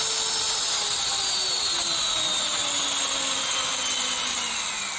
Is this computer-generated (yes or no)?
no